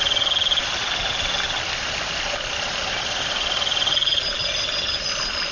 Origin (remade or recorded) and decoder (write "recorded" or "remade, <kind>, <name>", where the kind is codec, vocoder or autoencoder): recorded